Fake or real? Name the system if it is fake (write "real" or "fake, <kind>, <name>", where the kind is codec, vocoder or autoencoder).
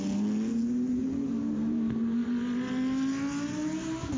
real